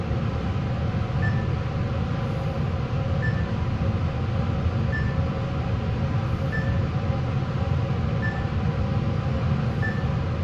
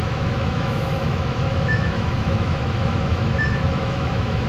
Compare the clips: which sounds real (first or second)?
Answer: first